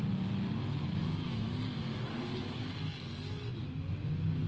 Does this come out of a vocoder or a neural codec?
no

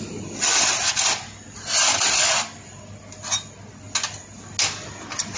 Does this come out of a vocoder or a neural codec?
no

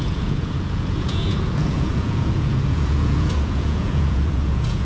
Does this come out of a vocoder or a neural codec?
yes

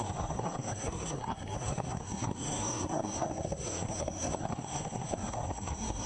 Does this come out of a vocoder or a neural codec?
yes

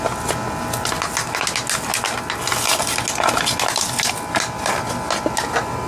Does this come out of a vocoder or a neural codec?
no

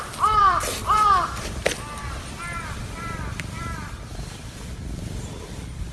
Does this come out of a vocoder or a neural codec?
yes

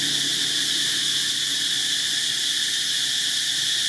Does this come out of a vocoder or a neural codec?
no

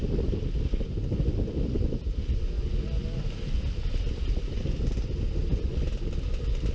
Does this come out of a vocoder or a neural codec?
no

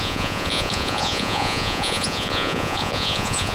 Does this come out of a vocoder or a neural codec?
yes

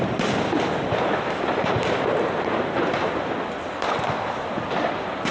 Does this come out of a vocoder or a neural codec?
yes